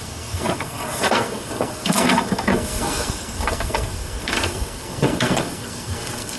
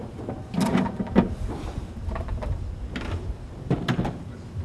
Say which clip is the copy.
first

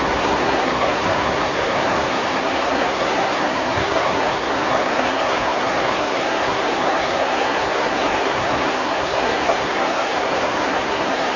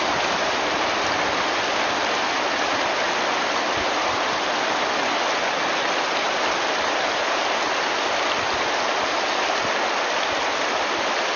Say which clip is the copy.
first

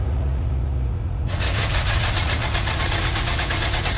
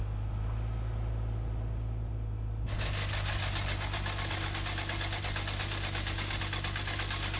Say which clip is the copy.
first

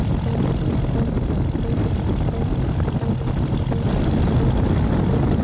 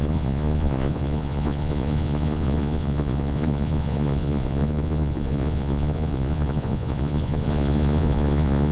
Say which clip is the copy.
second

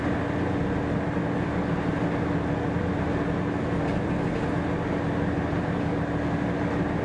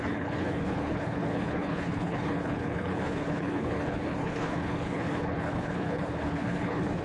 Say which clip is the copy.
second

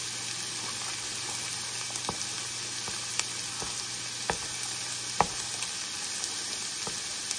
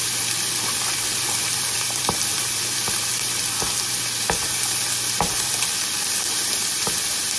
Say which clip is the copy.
second